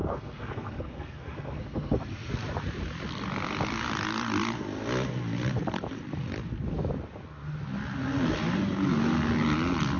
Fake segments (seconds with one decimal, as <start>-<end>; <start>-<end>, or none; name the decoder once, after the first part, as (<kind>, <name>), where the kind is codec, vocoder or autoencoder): 0.0-2.3 (codec, SNAC)